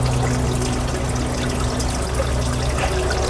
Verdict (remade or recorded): recorded